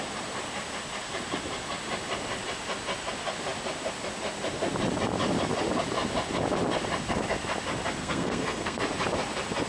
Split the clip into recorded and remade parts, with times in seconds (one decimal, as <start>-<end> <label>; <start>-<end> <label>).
0.0-8.0 recorded; 8.0-8.8 remade; 8.8-9.7 recorded